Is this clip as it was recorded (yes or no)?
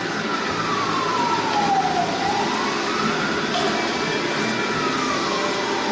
yes